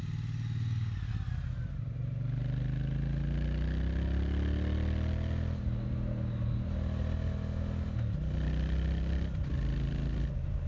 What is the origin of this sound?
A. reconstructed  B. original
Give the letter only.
B